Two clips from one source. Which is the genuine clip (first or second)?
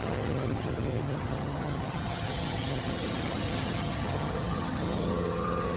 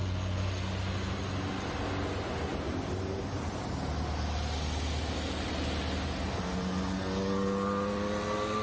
second